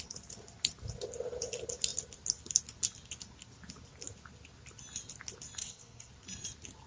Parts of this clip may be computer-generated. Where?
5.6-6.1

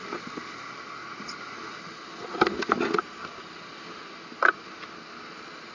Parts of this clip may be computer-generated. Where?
1.0-1.6

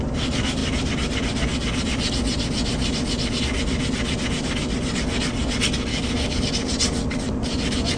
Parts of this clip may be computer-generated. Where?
5.9-6.4

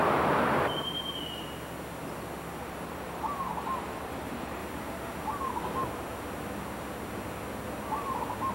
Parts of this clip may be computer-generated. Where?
2.6-4.6

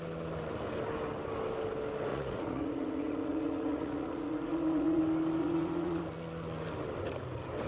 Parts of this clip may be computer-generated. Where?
2.1-5.0; 5.4-6.0